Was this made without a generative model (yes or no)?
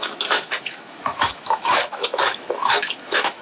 no